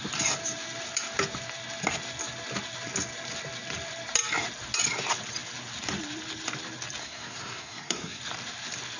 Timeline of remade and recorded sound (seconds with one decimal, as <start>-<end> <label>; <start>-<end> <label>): 0.0-7.0 recorded; 7.0-8.2 remade; 8.2-9.0 recorded